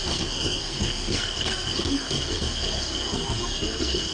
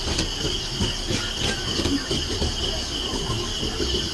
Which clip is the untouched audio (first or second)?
second